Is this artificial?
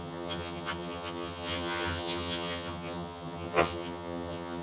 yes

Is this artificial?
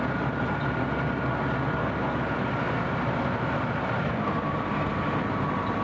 no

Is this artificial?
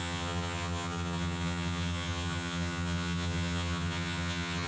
yes